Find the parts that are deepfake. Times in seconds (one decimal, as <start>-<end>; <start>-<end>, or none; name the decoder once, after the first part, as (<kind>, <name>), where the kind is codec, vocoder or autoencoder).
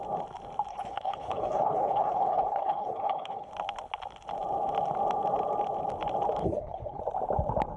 0.7-3.5 (codec, HILCodec); 6.4-7.0